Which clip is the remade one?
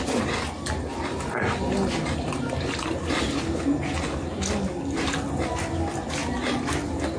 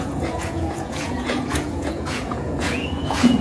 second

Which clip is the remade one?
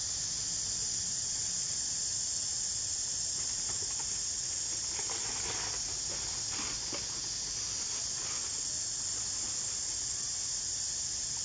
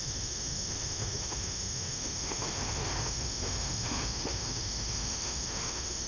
second